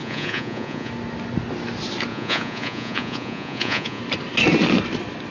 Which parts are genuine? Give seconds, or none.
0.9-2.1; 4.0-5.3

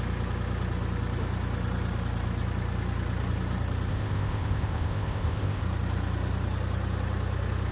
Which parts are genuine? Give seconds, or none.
0.0-3.9; 5.6-7.7

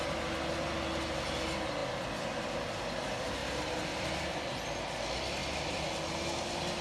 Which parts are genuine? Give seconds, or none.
0.0-6.8

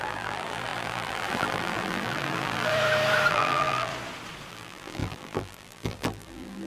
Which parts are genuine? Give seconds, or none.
2.7-3.3; 3.9-4.5